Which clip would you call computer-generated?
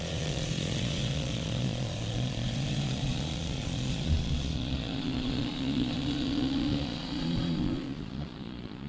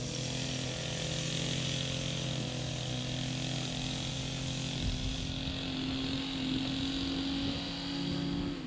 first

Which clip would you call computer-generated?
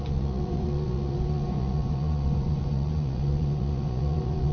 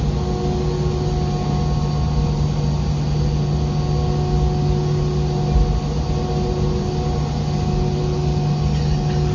first